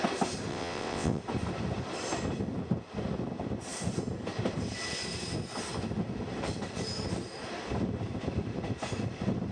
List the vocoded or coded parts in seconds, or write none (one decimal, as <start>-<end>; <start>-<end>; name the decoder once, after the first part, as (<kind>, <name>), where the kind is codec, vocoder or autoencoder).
0.5-1.2 (vocoder, WaveNeXt)

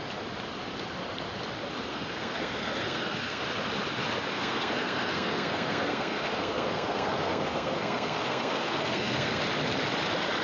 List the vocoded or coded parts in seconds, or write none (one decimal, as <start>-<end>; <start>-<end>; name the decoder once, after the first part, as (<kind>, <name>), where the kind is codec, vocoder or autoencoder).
1.9-3.4 (codec, SNAC); 4.3-9.4

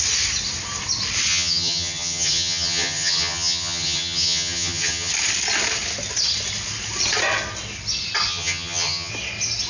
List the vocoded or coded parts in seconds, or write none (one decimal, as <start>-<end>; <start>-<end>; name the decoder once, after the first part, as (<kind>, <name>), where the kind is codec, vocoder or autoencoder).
1.3-5.1 (vocoder, HiFi-GAN); 8.3-9.1

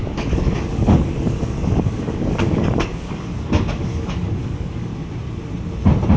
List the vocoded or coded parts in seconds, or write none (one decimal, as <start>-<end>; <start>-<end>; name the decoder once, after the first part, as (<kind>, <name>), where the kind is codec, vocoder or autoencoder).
0.0-4.9 (codec, DAC)